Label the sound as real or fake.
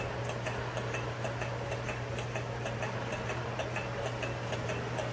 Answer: real